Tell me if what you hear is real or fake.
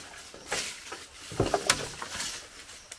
real